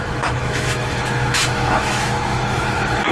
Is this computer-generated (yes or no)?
yes